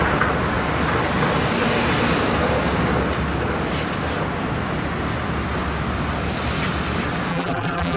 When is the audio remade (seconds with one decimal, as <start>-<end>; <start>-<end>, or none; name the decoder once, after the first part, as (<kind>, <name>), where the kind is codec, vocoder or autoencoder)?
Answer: 7.3-8.0 (vocoder, BigVGAN v2)

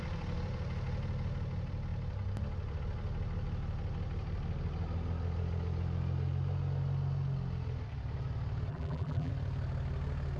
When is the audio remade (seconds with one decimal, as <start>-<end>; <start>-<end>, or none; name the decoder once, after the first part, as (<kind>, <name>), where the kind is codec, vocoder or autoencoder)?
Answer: 8.7-9.3 (vocoder, BigVGAN v2)

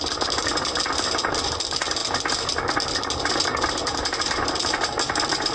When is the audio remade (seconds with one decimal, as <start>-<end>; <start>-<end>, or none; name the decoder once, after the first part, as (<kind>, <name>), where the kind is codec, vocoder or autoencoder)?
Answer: 0.0-2.0 (vocoder, BigVGAN v2); 3.5-5.5

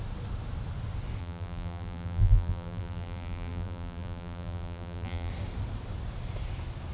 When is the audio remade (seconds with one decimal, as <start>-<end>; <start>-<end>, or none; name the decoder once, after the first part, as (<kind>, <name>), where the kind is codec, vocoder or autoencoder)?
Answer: 1.2-5.3 (vocoder, BigVGAN v2)

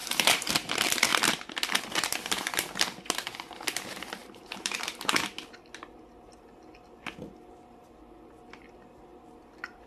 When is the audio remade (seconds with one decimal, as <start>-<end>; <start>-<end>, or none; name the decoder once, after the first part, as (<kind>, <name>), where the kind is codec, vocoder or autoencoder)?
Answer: 0.0-0.5 (vocoder, BigVGAN v2); 4.2-5.0; 9.1-9.9

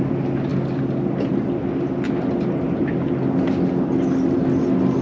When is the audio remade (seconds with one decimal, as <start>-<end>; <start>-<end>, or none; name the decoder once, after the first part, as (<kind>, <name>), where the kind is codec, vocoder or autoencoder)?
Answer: none